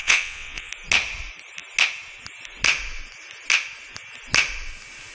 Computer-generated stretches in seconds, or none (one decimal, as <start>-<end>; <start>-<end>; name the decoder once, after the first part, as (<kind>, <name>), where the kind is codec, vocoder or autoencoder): 0.0-0.7 (vocoder, WaveNeXt)